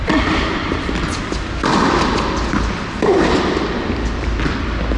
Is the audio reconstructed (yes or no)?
no